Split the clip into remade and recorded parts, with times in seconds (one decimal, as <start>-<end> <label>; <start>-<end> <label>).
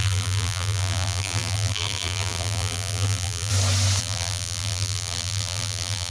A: 0.0-3.5 remade; 3.5-4.0 recorded; 4.0-6.1 remade